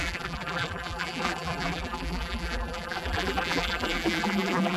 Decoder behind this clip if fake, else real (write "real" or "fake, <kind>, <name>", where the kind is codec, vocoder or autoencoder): fake, vocoder, BigVGAN v2